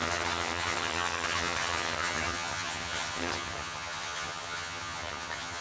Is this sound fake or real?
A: fake